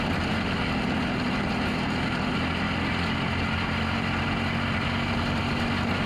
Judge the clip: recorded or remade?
recorded